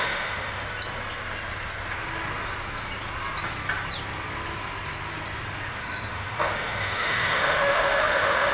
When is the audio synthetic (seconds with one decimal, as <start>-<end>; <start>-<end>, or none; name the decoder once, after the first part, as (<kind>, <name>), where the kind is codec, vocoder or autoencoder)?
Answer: 0.0-0.6 (autoencoder, DAC-VAE); 5.7-8.5